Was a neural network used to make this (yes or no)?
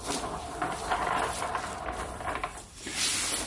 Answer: no